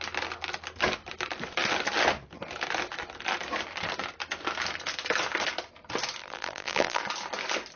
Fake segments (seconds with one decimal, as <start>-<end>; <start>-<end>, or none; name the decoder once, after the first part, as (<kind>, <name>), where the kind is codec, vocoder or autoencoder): 6.2-7.0 (vocoder, BigVGAN v2)